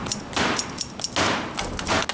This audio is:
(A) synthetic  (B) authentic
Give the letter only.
B